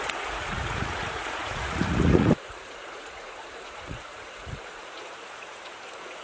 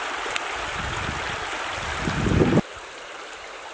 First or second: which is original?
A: second